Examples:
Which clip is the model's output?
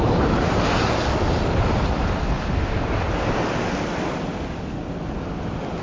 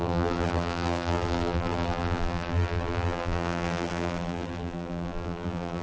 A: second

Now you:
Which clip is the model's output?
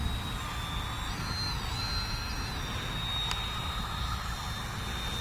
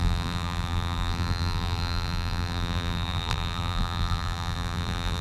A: second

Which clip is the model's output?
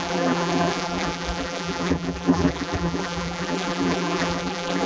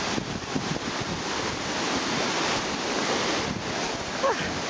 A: first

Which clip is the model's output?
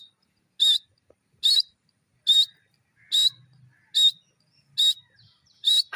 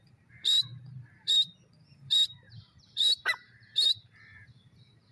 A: second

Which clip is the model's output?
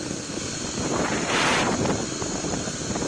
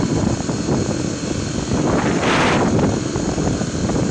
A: first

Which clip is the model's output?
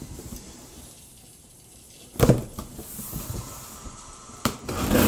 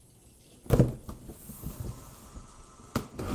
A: first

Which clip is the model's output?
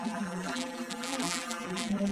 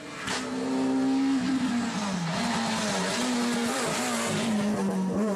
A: first